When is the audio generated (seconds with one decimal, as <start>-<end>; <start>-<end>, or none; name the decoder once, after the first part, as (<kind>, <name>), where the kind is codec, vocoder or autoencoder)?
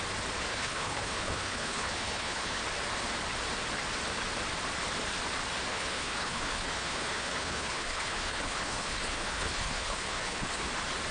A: 0.5-2.6 (codec, HILCodec); 5.7-10.7